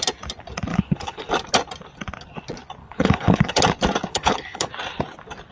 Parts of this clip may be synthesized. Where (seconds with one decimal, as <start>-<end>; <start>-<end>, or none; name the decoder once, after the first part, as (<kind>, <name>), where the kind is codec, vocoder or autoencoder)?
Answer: 0.7-1.3 (codec, HILCodec); 2.8-3.6; 4.1-4.7